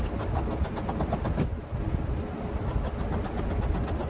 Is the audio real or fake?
real